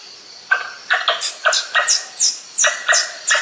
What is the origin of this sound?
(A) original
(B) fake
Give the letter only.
A